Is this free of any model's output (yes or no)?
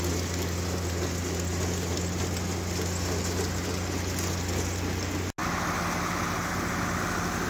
yes